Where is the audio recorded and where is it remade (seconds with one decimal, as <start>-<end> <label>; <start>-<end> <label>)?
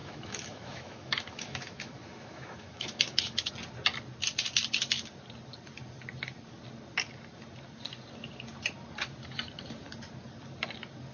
0.0-3.5 remade; 3.5-11.1 recorded